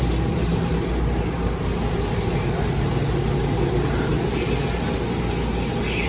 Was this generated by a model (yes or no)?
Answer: no